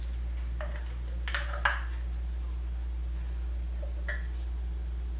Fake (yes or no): no